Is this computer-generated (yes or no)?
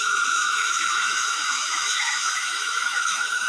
yes